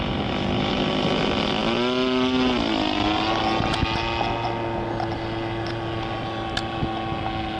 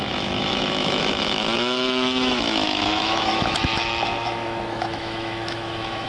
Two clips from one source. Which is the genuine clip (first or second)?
first